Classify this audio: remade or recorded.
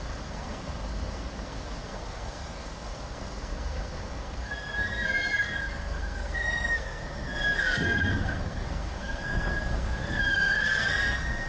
remade